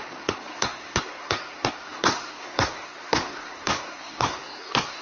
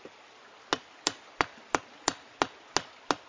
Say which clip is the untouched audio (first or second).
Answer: second